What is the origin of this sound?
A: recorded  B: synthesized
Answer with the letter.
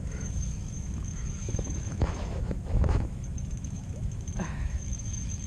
B